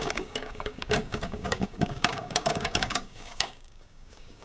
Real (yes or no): no